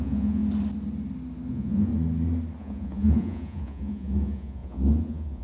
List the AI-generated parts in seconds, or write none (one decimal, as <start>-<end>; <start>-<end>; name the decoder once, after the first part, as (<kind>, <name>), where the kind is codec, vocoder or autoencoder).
0.0-0.4 (vocoder, Vocos); 1.5-1.9; 2.6-5.4